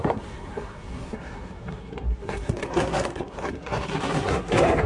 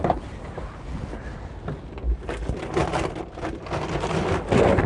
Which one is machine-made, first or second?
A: first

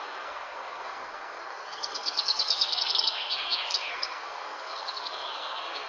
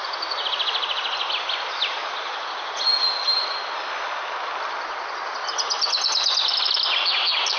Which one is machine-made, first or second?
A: first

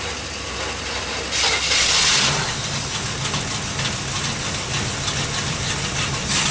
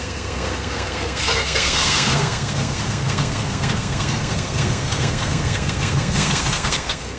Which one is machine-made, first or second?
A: second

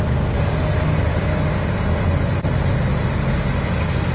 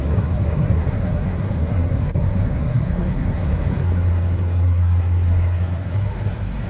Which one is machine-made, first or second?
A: second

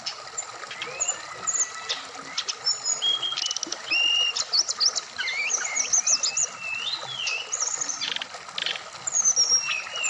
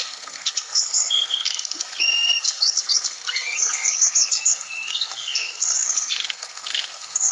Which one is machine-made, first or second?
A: second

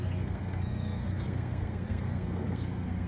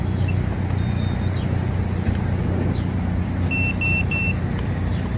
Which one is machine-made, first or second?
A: first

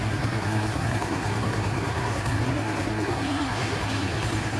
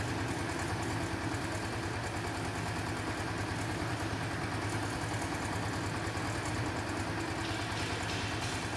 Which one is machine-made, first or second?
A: first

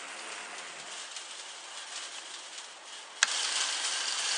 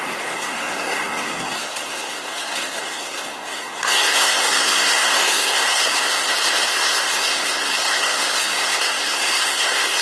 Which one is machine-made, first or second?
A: second